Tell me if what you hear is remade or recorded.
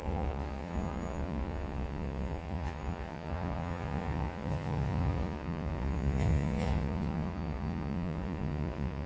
remade